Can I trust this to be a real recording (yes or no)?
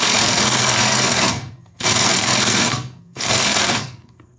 no